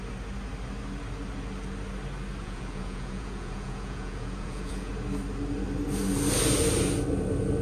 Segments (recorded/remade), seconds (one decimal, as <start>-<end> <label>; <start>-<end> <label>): 0.0-2.4 recorded; 2.4-4.9 remade; 4.9-7.6 recorded